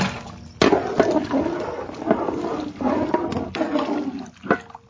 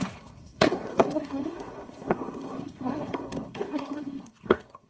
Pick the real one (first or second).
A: first